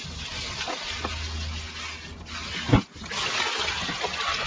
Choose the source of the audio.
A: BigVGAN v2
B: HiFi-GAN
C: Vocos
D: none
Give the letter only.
D